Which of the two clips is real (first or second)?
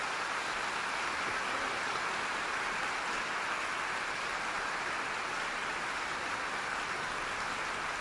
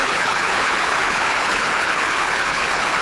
first